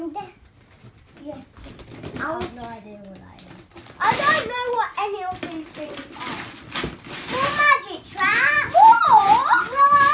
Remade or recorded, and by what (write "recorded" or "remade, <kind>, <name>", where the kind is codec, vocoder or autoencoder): recorded